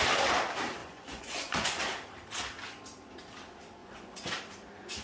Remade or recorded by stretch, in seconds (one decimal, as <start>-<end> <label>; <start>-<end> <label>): 0.0-0.8 recorded; 0.8-1.8 remade; 1.8-3.8 recorded; 3.8-4.3 remade; 4.3-5.0 recorded

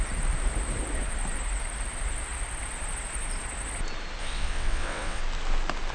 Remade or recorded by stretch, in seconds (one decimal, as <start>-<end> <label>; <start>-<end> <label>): 0.0-4.2 recorded; 4.2-5.2 remade; 5.2-5.9 recorded

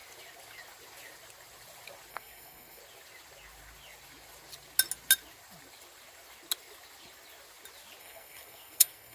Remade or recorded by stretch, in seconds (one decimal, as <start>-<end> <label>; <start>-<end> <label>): 0.0-2.1 recorded; 2.1-2.8 remade; 2.8-8.0 recorded; 8.0-9.1 remade

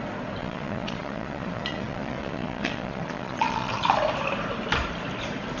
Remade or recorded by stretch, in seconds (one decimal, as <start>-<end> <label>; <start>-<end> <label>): 0.0-0.4 recorded; 0.4-3.8 remade; 3.8-5.6 recorded

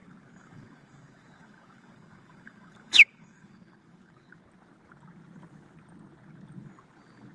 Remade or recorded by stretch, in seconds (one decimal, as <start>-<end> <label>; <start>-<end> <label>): 0.0-4.4 remade; 4.4-7.3 recorded

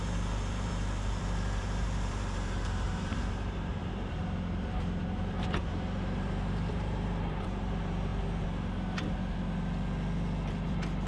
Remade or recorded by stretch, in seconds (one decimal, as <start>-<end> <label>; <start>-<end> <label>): 0.0-8.1 remade; 8.1-10.5 recorded; 10.5-11.1 remade